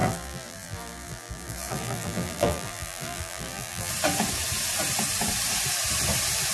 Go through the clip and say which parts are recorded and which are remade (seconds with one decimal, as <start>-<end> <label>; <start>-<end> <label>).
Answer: 0.0-3.9 remade; 3.9-6.5 recorded